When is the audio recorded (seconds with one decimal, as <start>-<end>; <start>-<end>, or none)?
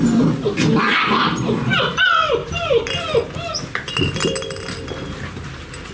0.0-0.9; 1.8-2.4; 3.0-5.9